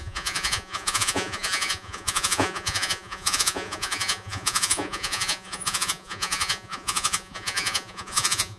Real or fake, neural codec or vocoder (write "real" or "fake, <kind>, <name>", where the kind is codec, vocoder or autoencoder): fake, vocoder, Vocos